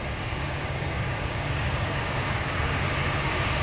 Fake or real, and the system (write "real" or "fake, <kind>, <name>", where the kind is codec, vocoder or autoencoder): fake, codec, DAC